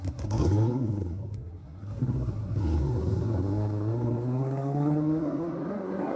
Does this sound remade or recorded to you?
remade